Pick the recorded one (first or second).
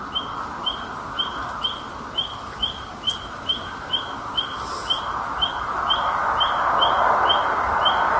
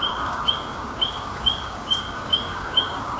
first